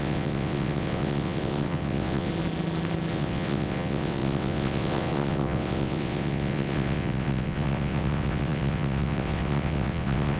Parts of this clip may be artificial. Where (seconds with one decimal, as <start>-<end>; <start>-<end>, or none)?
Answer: 0.0-2.3; 3.1-10.4